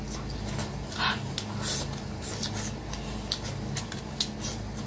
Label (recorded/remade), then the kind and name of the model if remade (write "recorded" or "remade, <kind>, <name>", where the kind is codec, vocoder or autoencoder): recorded